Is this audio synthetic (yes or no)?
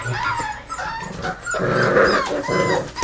no